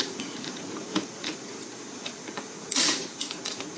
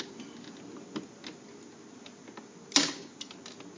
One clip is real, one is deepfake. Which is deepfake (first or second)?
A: first